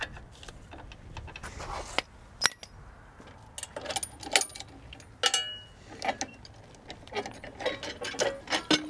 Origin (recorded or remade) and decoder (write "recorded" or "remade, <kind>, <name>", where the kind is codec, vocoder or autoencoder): recorded